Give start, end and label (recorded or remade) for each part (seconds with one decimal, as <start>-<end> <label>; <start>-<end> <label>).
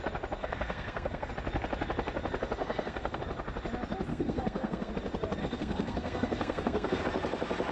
0.0-0.4 recorded; 0.4-1.3 remade; 1.3-2.6 recorded; 2.6-3.2 remade; 3.2-4.1 recorded; 4.1-4.9 remade; 4.9-5.4 recorded; 5.4-7.0 remade; 7.0-7.7 recorded